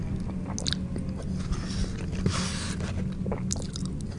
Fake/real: real